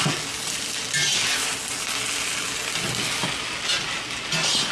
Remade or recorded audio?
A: recorded